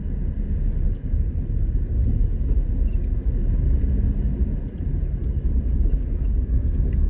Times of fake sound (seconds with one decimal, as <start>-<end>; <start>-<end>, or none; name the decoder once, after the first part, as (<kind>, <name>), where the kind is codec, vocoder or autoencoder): none